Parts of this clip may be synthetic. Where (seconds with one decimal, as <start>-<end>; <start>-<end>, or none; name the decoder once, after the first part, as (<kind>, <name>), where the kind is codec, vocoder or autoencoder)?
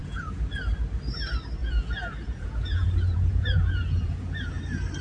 0.0-0.6 (vocoder, Vocos); 1.6-4.6